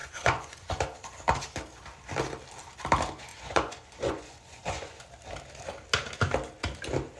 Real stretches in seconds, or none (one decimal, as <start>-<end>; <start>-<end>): 0.7-3.3; 5.0-7.2